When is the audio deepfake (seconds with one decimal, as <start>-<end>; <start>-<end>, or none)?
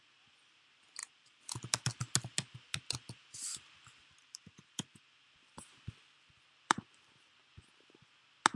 1.0-1.5; 3.5-7.4